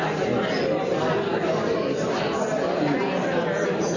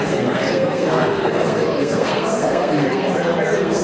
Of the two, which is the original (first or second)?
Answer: first